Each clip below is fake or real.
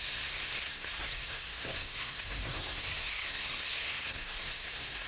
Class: fake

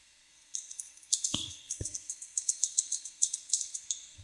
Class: fake